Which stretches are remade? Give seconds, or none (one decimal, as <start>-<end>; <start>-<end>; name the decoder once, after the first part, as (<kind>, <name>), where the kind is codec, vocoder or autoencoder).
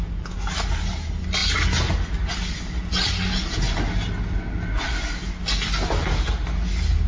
none